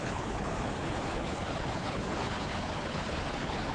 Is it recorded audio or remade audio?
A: remade